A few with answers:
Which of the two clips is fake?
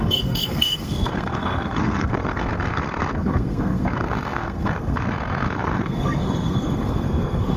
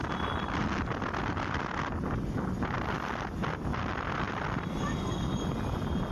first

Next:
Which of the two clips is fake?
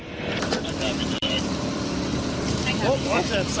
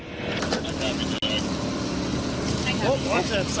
first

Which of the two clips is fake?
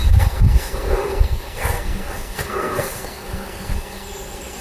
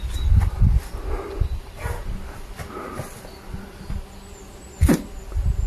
first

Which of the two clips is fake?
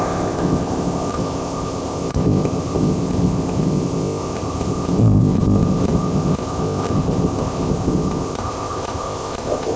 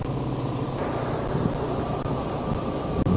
first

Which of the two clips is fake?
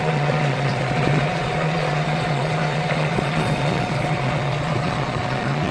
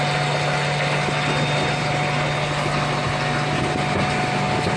first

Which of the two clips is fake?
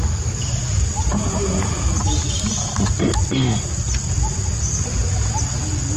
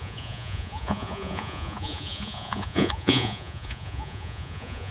second